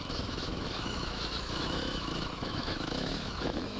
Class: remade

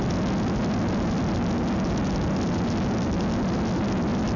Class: recorded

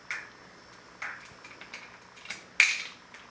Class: recorded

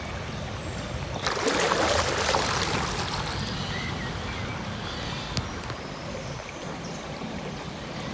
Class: recorded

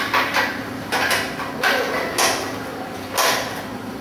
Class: recorded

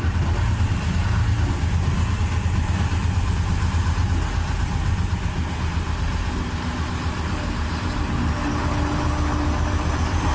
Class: recorded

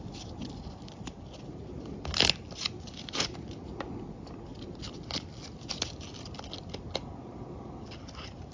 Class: recorded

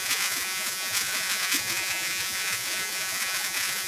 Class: remade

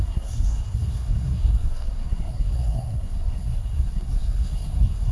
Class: remade